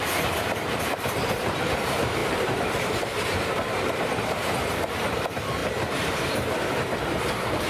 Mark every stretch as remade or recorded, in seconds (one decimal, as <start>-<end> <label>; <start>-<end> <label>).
0.0-5.6 remade; 5.6-7.0 recorded; 7.0-7.7 remade